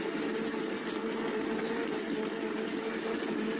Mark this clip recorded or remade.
recorded